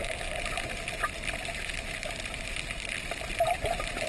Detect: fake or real real